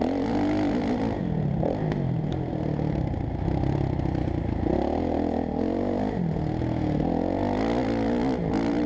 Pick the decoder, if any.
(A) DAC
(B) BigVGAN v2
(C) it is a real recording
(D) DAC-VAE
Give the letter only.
C